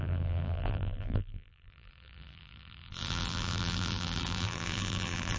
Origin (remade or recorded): remade